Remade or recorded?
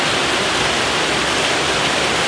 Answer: recorded